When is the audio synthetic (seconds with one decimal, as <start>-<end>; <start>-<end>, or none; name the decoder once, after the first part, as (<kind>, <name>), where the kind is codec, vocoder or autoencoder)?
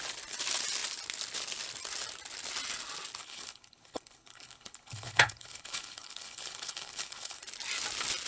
3.2-7.4 (codec, HILCodec)